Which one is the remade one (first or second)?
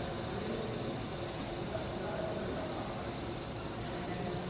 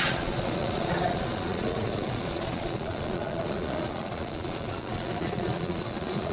second